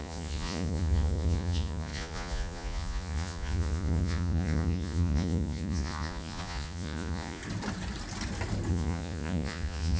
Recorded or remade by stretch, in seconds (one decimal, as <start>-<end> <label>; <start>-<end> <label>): 0.0-7.4 remade; 7.4-8.7 recorded; 8.7-10.0 remade